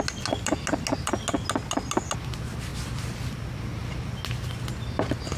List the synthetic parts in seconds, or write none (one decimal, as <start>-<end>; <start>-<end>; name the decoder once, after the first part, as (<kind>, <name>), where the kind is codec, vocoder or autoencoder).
none

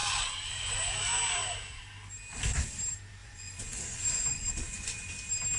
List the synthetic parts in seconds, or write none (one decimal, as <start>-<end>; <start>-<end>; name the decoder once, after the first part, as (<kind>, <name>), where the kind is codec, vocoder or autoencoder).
0.0-0.9 (vocoder, Vocos); 3.2-5.1